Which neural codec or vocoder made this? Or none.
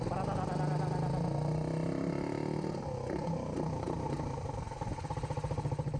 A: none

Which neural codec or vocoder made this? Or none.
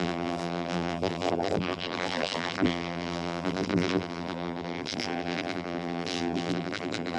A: vocoder, BigVGAN v2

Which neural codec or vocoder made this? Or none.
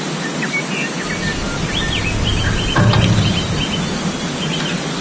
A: none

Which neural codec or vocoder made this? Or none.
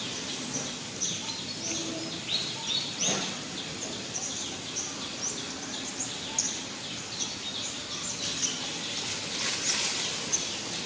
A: none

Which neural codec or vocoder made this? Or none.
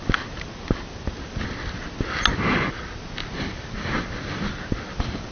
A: none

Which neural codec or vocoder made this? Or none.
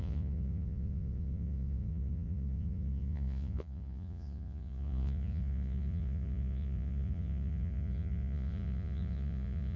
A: vocoder, Vocos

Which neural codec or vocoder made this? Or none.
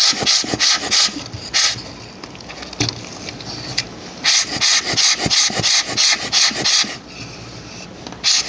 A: none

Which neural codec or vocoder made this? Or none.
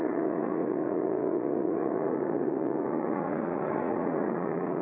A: vocoder, Vocos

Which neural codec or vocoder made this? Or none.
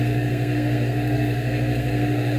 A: codec, SNAC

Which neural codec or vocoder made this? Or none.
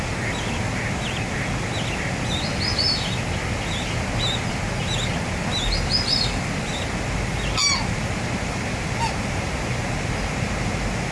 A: none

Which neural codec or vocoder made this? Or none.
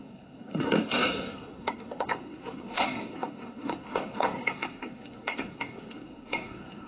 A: codec, SNAC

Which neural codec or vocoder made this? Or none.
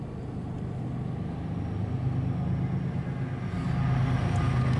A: none